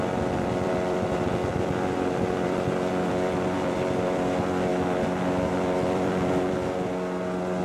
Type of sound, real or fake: fake